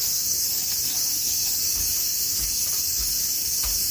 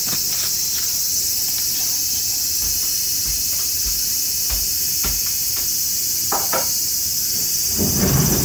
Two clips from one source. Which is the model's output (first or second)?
first